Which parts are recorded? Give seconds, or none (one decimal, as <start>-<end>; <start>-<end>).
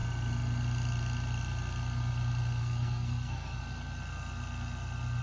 0.0-2.6; 3.6-5.2